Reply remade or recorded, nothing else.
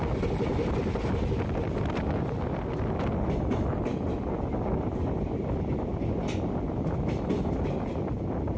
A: recorded